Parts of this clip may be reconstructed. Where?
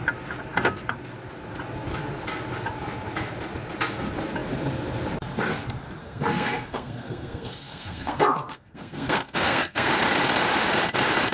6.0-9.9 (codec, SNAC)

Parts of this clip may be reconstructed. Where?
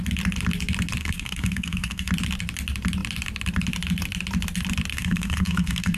1.0-2.1 (codec, SNAC); 4.9-6.0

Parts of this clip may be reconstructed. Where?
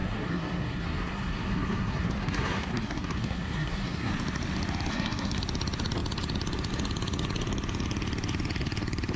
0.0-4.1 (codec, SNAC); 4.9-5.4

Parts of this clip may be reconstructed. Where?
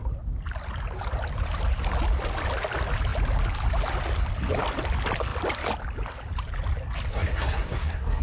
7.1-8.2 (codec, SNAC)